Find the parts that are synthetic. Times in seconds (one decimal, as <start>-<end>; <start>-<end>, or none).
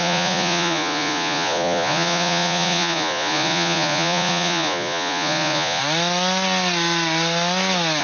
0.0-5.8